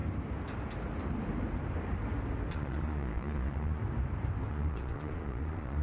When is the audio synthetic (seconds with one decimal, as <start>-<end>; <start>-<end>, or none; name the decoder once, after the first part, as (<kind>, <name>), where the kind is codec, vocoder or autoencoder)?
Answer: 2.5-3.8 (vocoder, Vocos); 4.5-5.8